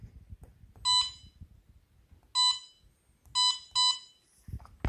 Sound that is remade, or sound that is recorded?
recorded